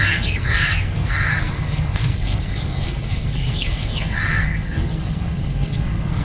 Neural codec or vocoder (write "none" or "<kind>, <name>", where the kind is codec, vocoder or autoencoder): codec, SNAC